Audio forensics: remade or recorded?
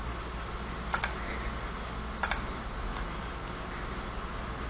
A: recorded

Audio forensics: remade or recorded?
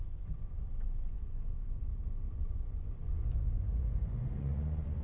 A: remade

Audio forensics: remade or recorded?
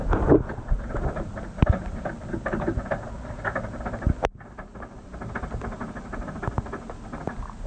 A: recorded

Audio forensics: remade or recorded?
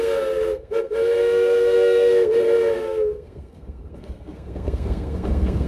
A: remade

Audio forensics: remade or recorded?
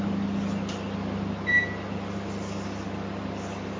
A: recorded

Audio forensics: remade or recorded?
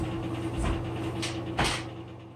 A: recorded